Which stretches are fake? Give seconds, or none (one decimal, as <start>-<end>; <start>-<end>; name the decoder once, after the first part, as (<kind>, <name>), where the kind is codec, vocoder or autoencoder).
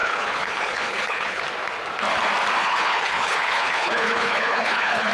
0.0-1.4 (codec, HILCodec); 2.6-5.1